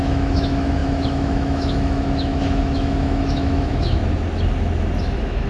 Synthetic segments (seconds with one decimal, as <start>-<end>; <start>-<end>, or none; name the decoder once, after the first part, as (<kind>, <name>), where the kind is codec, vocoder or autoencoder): 0.0-4.0 (autoencoder, DAC-VAE); 5.0-5.5